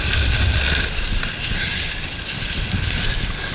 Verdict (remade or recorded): recorded